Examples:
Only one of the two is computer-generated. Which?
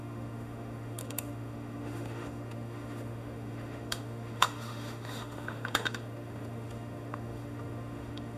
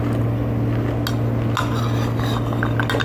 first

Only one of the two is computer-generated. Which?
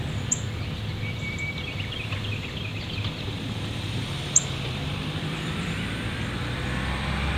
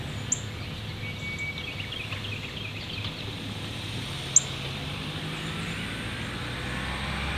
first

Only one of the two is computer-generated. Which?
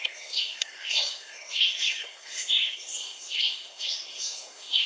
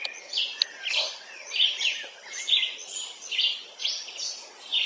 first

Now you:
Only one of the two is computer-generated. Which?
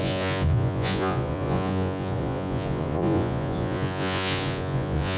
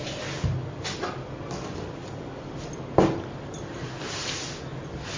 first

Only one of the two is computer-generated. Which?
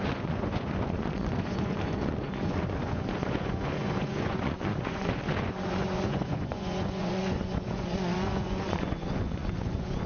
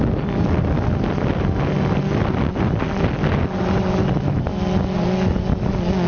first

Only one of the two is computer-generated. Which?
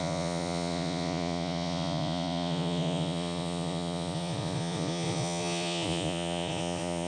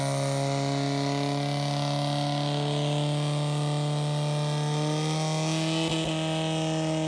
first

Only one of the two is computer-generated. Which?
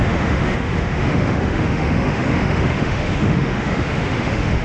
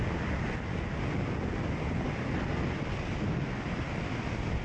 first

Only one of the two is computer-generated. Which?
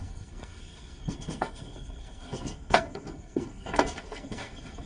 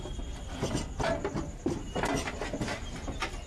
first